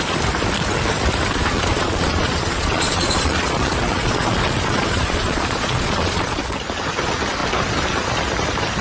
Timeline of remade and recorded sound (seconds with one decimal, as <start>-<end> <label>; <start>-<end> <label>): 0.0-1.4 recorded; 1.4-6.4 remade; 6.4-8.8 recorded